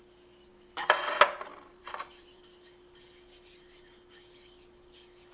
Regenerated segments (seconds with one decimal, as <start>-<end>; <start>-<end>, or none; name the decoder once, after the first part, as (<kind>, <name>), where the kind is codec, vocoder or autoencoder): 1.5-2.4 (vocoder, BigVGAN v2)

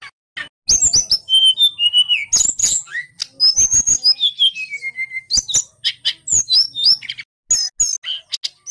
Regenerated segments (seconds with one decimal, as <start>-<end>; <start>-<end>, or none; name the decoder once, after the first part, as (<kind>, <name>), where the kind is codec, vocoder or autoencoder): 2.6-3.2 (vocoder, BigVGAN v2)

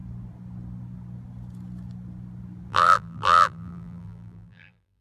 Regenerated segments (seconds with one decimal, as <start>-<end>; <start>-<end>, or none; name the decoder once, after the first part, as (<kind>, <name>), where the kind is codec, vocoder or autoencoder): 2.7-5.0 (vocoder, BigVGAN v2)